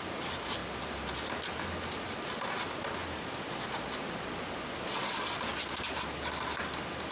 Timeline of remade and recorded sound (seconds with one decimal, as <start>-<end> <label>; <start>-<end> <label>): 0.0-7.1 recorded